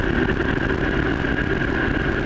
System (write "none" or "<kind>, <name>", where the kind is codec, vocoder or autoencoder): none